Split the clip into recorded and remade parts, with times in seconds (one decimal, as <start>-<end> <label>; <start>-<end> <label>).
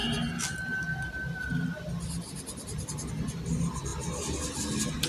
0.0-5.1 recorded